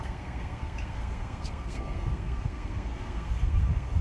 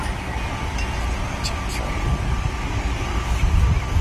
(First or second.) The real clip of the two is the second